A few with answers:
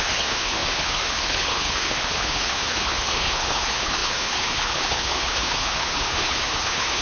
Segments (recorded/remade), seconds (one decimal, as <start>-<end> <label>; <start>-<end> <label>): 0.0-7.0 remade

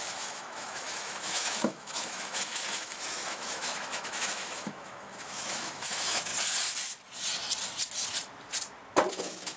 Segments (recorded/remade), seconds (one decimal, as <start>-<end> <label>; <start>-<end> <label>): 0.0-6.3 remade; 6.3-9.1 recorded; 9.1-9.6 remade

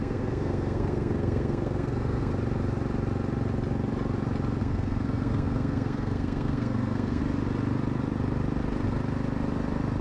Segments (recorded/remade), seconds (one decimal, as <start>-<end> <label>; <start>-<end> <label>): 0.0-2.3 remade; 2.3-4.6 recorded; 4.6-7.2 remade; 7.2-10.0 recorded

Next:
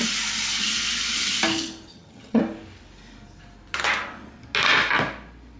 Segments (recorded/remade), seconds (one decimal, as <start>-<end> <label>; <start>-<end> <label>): 0.0-1.9 recorded; 1.9-2.4 remade; 2.4-5.6 recorded

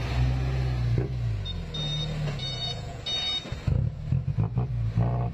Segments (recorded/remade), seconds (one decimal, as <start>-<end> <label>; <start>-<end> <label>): 0.0-2.4 recorded; 2.4-3.0 remade; 3.0-5.3 recorded

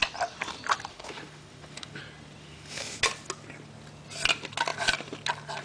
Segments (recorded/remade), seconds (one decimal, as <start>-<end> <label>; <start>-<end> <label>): 0.0-0.9 recorded; 0.9-2.0 remade; 2.0-2.4 recorded; 2.4-3.0 remade; 3.0-5.6 recorded